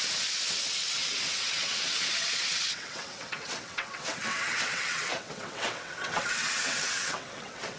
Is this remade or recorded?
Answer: remade